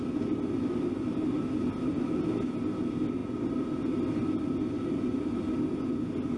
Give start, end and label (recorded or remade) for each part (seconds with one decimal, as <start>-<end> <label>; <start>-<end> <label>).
0.0-6.4 recorded